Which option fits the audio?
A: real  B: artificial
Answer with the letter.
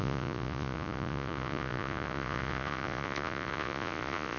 B